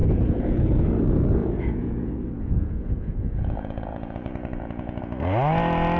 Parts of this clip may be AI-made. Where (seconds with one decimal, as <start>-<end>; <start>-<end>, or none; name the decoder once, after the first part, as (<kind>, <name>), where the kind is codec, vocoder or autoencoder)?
0.0-0.9 (vocoder, Vocos); 1.4-5.0

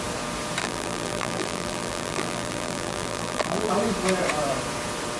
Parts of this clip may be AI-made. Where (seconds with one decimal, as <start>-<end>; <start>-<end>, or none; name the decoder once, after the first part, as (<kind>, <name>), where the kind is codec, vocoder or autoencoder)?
0.6-3.7 (vocoder, BigVGAN v2)